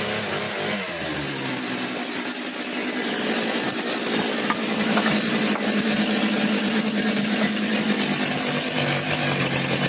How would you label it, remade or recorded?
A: recorded